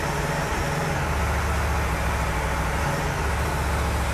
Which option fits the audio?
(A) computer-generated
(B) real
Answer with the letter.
B